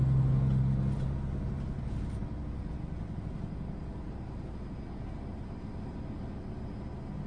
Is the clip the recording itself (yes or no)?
yes